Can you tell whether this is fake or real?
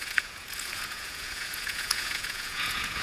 fake